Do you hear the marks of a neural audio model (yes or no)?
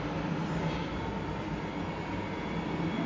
no